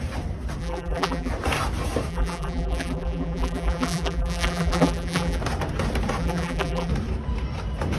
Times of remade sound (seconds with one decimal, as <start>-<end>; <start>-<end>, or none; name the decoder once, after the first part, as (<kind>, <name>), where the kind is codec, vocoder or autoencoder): 0.6-1.3 (vocoder, BigVGAN v2); 2.1-5.4; 6.2-6.9